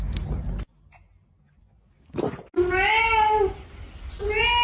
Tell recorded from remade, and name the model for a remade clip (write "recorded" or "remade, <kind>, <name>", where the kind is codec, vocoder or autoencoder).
recorded